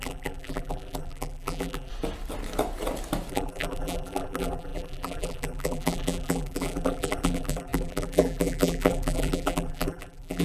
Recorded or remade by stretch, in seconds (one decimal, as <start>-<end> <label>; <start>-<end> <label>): 0.0-1.9 remade; 1.9-3.3 recorded; 3.3-10.4 remade